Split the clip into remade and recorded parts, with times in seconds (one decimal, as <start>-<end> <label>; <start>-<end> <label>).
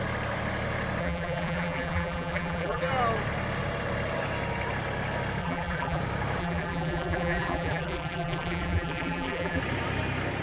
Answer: 0.0-1.0 recorded; 1.0-2.9 remade; 2.9-5.4 recorded; 5.4-6.0 remade; 6.0-6.4 recorded; 6.4-9.6 remade; 9.6-10.4 recorded